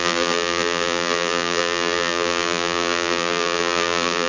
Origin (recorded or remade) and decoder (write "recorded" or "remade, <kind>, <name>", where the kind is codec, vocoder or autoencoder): remade, vocoder, BigVGAN v2